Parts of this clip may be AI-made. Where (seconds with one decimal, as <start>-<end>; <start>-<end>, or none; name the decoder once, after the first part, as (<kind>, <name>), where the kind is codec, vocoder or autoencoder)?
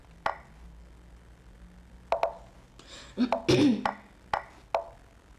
none